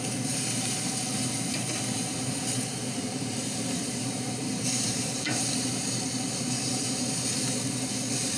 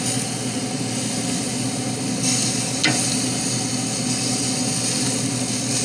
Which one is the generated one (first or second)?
first